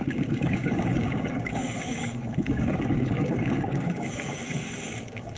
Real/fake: fake